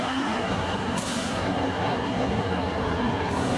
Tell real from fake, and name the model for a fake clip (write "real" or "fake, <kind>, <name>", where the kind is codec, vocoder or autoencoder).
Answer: fake, codec, SNAC